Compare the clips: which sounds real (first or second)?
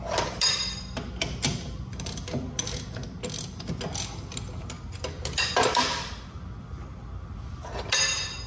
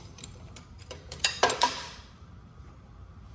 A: first